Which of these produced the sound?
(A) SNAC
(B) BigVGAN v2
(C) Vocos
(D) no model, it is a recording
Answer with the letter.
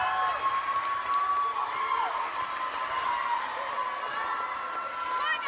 D